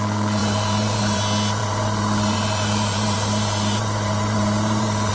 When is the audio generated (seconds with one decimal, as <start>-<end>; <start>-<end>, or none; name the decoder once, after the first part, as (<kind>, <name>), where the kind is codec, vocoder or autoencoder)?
0.4-1.2 (vocoder, BigVGAN v2); 1.6-5.1